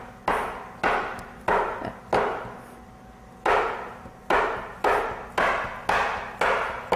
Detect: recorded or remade recorded